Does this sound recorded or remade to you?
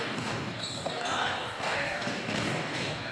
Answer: remade